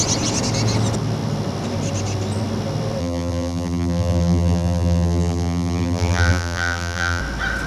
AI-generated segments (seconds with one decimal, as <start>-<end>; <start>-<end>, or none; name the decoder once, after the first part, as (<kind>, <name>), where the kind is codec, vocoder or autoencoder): 3.0-7.2 (vocoder, BigVGAN v2)